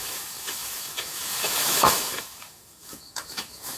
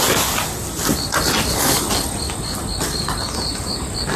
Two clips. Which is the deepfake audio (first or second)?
first